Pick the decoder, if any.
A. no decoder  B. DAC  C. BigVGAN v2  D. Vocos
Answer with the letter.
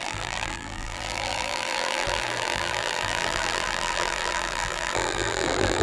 C